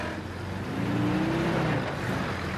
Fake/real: real